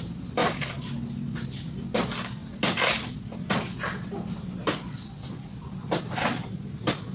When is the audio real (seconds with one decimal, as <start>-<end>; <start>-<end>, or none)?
0.0-0.4; 0.9-7.1